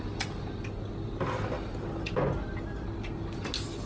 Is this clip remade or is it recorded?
recorded